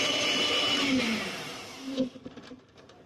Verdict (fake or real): fake